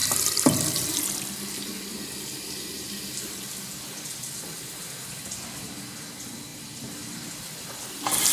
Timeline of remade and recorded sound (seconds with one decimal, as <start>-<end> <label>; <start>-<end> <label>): 0.0-8.3 recorded